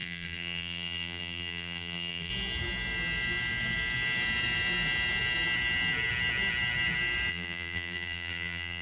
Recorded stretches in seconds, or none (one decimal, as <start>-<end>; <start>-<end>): 2.3-7.3